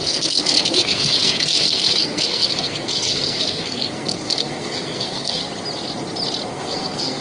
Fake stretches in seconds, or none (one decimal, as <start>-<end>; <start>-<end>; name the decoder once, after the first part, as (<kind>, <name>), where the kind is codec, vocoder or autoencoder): 0.0-5.4 (codec, SNAC); 6.5-7.2